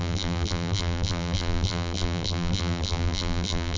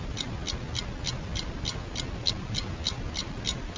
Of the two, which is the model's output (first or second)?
first